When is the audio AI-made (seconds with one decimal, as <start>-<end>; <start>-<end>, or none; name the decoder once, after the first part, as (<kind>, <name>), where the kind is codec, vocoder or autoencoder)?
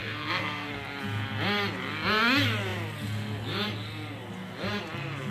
0.0-0.7 (codec, SNAC)